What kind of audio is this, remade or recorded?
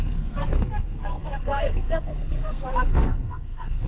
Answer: remade